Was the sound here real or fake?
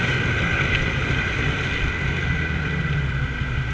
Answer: real